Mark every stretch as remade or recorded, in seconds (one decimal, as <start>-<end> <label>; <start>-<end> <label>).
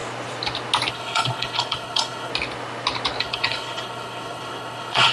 0.0-0.9 recorded; 0.9-2.3 remade; 2.3-3.2 recorded; 3.2-5.1 remade